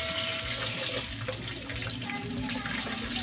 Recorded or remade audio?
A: recorded